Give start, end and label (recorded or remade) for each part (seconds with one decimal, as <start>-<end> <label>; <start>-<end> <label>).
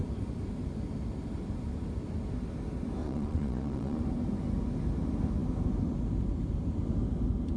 0.0-3.0 recorded; 3.0-4.0 remade; 4.0-7.6 recorded